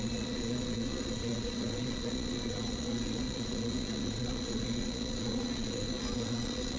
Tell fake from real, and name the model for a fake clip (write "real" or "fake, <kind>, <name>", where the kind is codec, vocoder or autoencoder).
fake, vocoder, Vocos